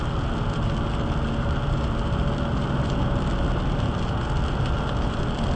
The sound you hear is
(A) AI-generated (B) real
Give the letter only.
B